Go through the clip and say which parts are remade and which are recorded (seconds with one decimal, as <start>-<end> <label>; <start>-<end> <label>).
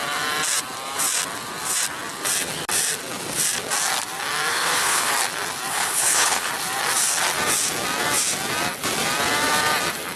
0.0-4.5 recorded; 4.5-5.1 remade; 5.1-5.7 recorded; 5.7-6.5 remade; 6.5-10.2 recorded